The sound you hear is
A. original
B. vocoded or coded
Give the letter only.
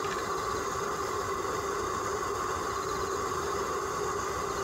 A